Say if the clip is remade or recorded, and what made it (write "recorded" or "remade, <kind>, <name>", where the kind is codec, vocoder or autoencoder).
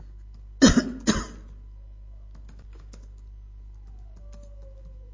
recorded